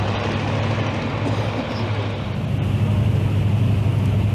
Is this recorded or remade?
recorded